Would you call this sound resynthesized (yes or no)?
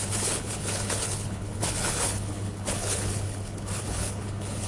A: yes